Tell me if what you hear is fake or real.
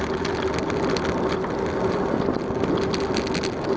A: real